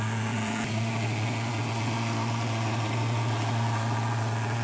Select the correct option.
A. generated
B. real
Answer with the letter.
B